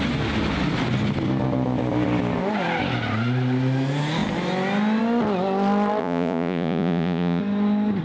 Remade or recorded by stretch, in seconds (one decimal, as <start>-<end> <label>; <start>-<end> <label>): 0.0-6.0 recorded; 6.0-7.4 remade; 7.4-8.0 recorded